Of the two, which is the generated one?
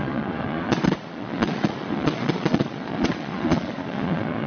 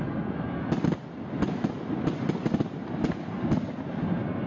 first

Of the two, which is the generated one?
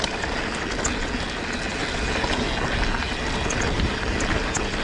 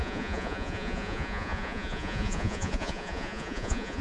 second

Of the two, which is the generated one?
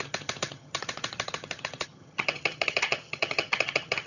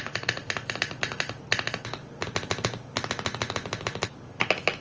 first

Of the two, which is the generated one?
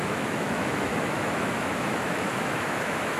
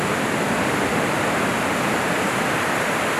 first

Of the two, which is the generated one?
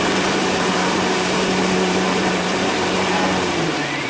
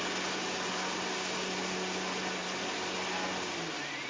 first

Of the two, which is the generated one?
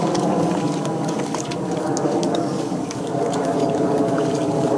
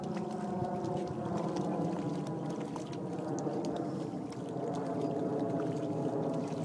first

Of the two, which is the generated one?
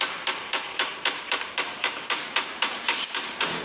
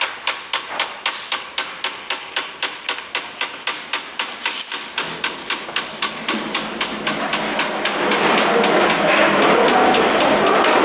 first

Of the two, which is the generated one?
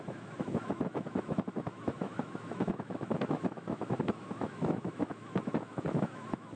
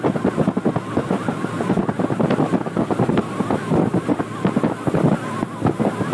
first